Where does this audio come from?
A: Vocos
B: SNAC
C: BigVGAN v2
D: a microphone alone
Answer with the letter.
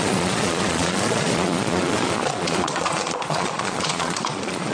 A